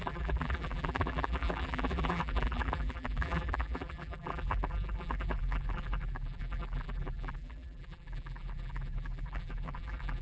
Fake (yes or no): yes